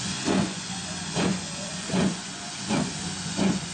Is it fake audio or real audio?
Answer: fake